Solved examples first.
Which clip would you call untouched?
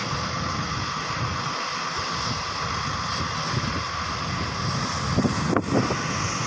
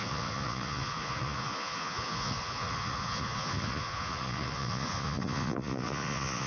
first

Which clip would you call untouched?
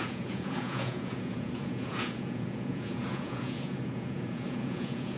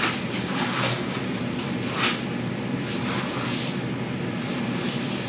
second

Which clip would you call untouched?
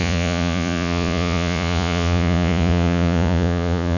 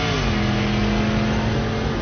second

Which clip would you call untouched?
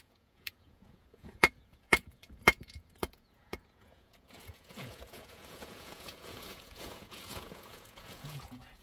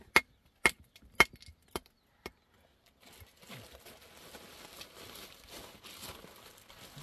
second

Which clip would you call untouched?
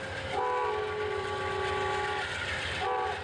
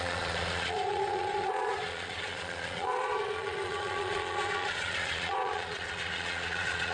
first